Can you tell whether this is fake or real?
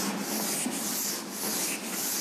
real